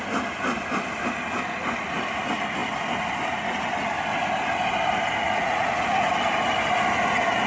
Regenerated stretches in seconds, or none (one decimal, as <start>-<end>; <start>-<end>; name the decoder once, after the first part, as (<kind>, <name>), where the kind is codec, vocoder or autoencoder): 5.2-6.0 (vocoder, Vocos)